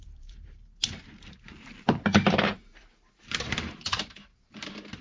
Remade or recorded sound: remade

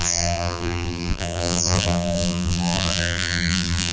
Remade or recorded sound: remade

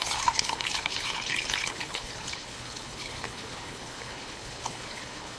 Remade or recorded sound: remade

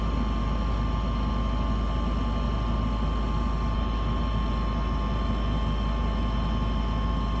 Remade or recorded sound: recorded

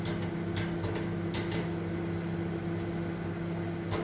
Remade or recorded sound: recorded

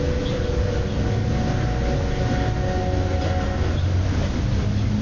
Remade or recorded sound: recorded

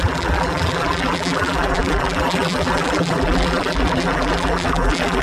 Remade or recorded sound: remade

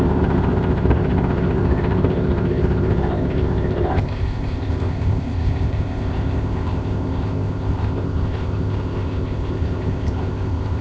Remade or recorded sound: remade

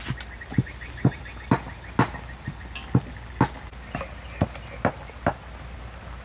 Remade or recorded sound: recorded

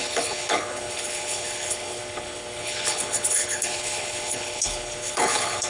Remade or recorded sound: remade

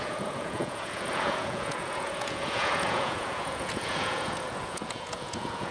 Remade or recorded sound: remade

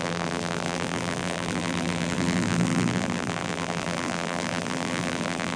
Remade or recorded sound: remade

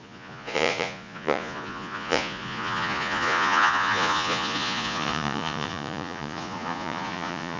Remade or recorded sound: remade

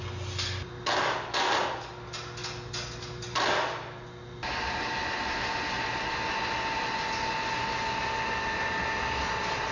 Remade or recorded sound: recorded